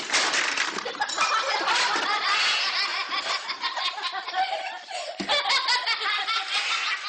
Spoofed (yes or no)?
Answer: no